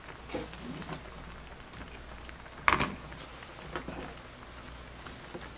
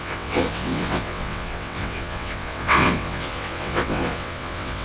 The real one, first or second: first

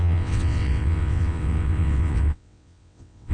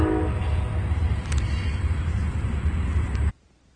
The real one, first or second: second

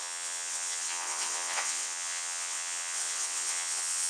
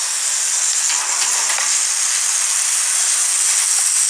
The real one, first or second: second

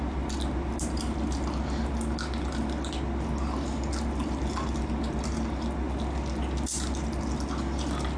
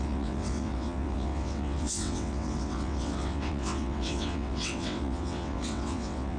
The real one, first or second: first